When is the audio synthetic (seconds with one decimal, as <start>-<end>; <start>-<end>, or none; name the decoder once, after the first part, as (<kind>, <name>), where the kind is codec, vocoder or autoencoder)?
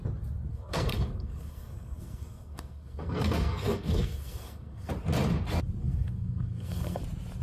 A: 0.5-4.9 (codec, SNAC); 5.8-7.0